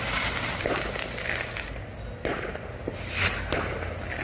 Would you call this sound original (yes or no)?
yes